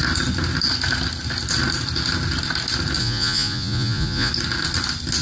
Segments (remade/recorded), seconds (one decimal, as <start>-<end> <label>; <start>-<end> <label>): 0.0-3.0 recorded; 3.0-4.3 remade; 4.3-5.2 recorded